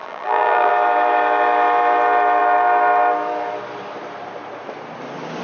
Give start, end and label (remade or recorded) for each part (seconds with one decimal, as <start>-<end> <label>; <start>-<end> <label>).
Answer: 0.0-0.7 remade; 0.7-5.4 recorded